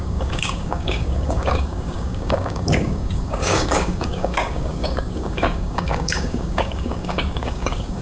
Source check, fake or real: fake